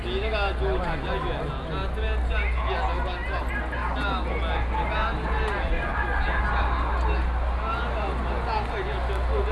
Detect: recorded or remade recorded